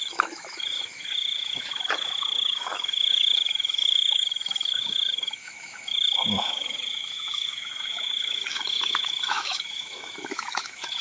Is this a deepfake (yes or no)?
yes